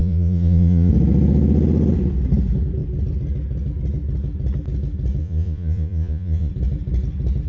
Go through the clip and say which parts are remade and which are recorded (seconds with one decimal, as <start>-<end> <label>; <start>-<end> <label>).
0.0-0.9 remade; 0.9-5.2 recorded; 5.2-6.5 remade; 6.5-7.5 recorded